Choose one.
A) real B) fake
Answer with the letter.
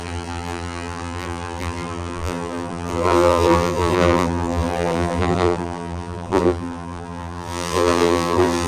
B